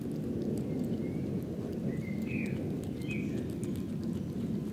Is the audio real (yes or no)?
yes